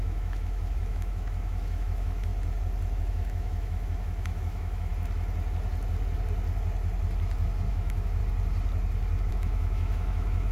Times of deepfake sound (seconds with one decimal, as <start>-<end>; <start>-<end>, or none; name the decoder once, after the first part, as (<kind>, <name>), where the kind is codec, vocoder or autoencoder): 0.0-2.3 (autoencoder, DAC-VAE); 3.0-4.9; 7.7-8.2; 9.3-10.5